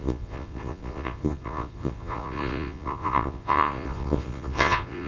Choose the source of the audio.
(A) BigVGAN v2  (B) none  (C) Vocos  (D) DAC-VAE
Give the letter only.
C